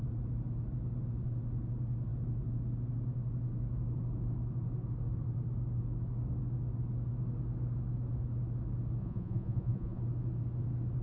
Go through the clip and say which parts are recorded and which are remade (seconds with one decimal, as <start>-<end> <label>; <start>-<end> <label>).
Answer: 0.0-9.0 recorded; 9.0-10.0 remade; 10.0-11.0 recorded